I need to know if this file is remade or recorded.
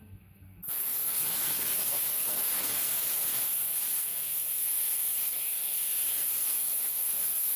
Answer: remade